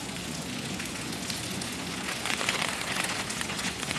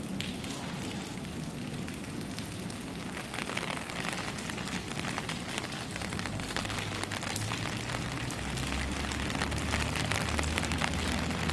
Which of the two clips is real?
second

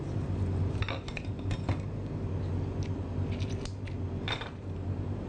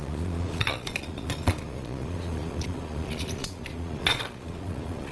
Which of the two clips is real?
first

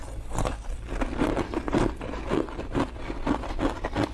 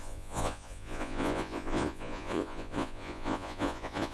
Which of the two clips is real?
first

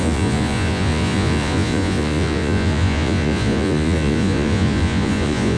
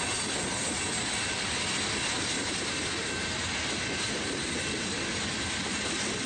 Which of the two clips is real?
second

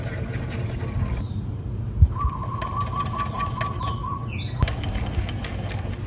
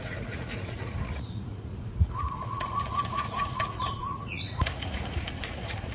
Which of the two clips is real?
first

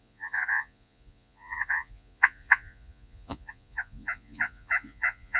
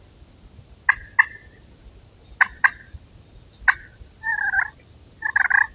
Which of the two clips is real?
second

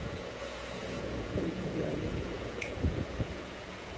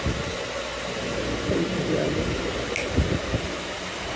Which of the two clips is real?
second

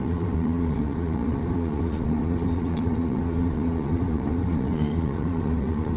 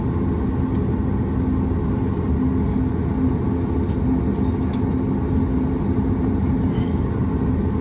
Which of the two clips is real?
second